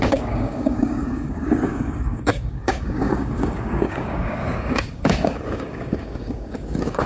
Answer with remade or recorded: remade